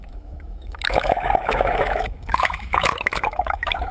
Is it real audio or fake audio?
fake